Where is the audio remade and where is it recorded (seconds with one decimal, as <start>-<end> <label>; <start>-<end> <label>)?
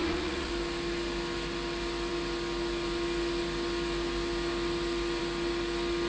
0.0-0.5 remade; 0.5-6.1 recorded